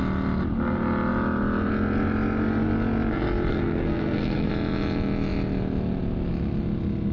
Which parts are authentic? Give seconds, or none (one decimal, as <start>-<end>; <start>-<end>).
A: 0.0-3.5; 4.5-7.1